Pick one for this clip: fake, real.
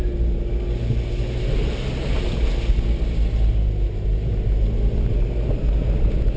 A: real